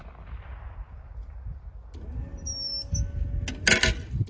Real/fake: real